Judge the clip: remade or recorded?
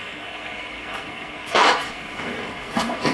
remade